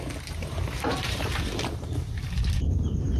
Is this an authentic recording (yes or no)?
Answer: no